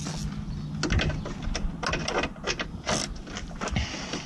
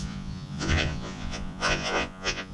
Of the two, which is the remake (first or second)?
second